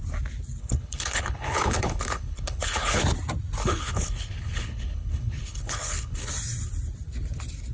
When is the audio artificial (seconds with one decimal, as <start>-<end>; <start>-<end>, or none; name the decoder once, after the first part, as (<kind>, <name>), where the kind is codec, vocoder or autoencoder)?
0.6-3.0 (codec, HILCodec); 3.6-6.3